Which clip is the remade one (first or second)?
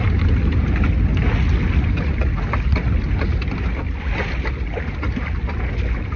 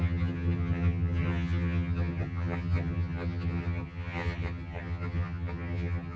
second